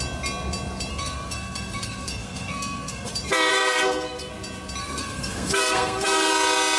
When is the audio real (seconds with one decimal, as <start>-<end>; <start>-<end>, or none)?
0.0-0.9; 3.1-3.5; 4.3-4.8; 6.3-6.8